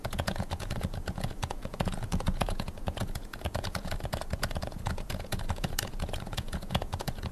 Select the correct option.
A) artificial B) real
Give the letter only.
A